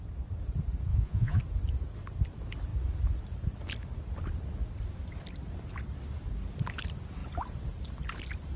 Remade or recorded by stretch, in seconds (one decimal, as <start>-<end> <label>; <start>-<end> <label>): 0.0-0.9 recorded; 0.9-1.4 remade; 1.4-8.6 recorded